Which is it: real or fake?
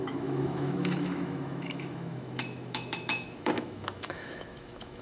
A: fake